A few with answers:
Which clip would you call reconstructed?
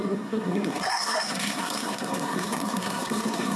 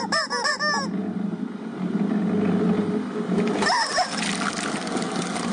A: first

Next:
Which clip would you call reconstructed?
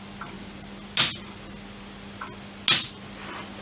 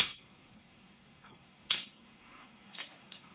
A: second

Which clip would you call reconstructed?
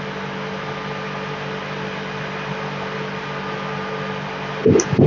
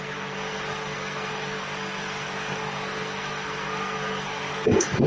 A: second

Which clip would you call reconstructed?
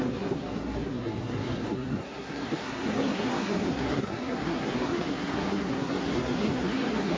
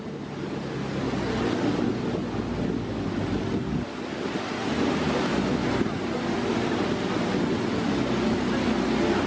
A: first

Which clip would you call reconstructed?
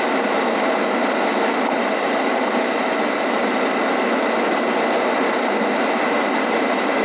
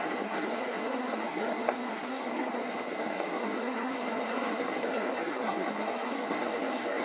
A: second